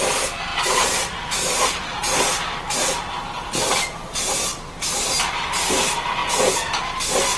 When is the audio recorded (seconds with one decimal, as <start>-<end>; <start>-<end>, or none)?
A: 0.0-7.4